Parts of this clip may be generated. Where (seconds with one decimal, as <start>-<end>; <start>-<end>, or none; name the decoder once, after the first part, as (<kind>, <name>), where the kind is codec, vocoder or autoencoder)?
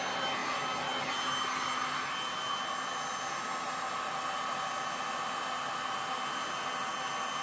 none